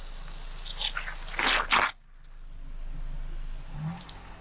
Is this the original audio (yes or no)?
yes